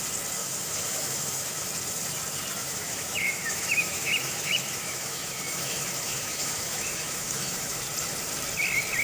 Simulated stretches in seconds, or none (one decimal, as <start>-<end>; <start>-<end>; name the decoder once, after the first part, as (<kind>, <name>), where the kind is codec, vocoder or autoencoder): 0.4-1.7 (autoencoder, DAC-VAE); 2.6-7.8